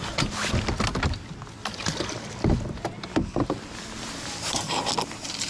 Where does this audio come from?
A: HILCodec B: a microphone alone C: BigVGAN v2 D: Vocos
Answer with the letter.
B